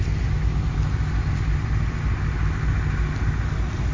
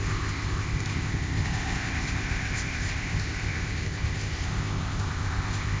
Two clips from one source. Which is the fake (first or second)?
second